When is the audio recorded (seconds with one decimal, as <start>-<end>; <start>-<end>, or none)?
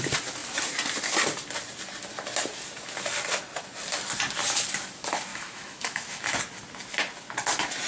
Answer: 0.0-5.3; 6.4-7.9